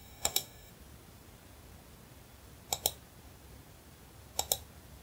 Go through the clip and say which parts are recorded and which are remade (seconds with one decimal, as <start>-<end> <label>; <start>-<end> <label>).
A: 0.0-0.7 remade; 0.7-5.0 recorded